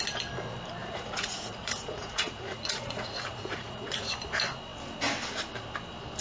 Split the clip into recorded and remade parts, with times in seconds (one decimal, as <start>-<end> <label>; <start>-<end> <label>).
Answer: 0.0-0.8 recorded; 0.8-4.1 remade; 4.1-6.2 recorded